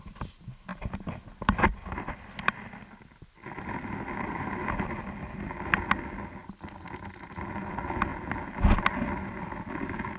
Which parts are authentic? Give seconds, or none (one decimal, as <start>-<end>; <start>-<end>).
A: 0.0-0.7; 2.1-10.2